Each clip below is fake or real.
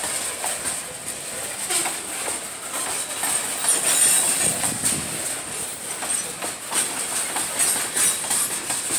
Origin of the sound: real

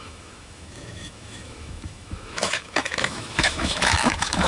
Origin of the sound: fake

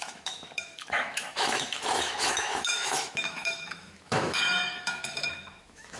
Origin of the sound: fake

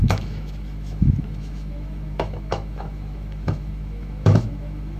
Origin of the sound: fake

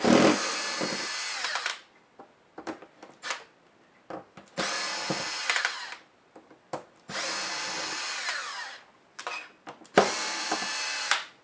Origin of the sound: real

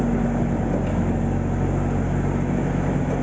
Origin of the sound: real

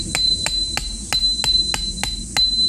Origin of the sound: real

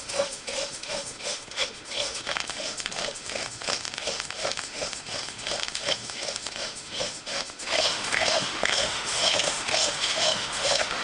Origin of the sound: fake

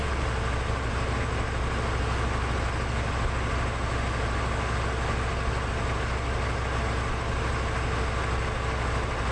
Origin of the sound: real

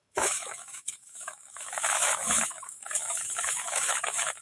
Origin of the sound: fake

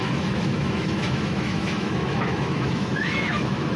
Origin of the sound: fake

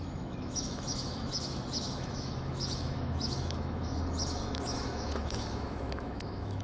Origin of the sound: fake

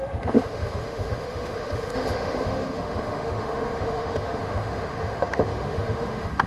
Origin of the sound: fake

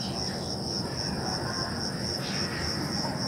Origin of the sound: real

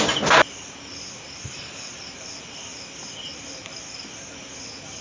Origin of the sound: real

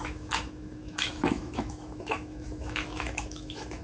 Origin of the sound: fake